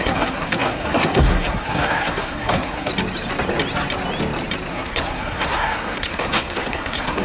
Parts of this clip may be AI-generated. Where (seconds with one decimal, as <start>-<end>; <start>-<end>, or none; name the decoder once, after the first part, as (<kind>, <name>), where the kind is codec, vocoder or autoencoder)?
0.0-2.9 (codec, SNAC); 4.7-7.2